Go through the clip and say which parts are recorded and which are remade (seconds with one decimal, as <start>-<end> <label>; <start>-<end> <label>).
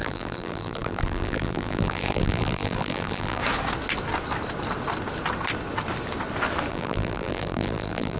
0.0-3.4 remade; 3.4-6.7 recorded; 6.7-8.2 remade